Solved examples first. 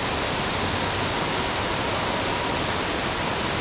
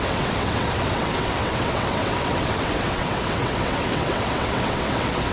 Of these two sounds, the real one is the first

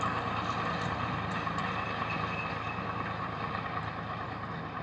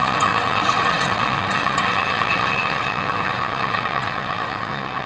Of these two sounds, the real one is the first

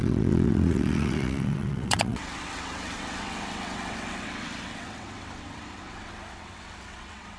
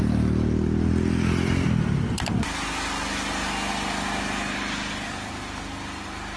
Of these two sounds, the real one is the second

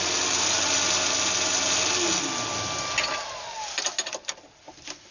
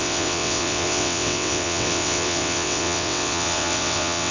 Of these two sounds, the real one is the first